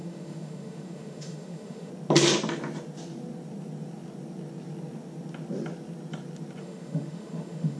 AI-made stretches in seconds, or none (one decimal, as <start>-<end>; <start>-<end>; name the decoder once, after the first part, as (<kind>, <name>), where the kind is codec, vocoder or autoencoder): 0.0-1.9 (autoencoder, DAC-VAE); 6.6-7.8